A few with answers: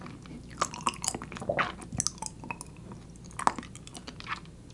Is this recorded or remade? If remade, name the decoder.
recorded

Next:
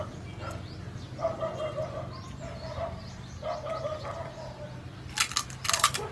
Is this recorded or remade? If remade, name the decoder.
recorded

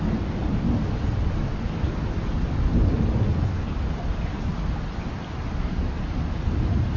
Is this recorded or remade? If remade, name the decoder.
recorded